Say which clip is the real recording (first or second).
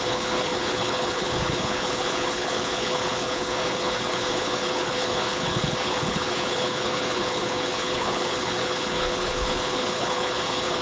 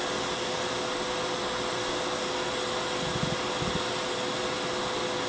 second